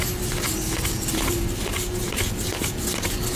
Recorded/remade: recorded